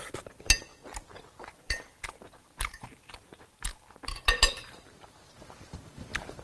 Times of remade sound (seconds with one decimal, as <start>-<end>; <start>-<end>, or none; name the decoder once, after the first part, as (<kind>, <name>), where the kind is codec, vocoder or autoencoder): 0.0-0.7 (vocoder, BigVGAN v2); 1.4-3.7; 4.5-6.4